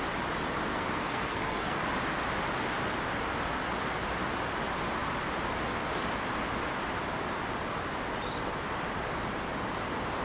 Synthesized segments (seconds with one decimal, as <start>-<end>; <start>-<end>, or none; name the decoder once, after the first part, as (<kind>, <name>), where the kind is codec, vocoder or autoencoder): 0.7-1.8 (codec, SNAC)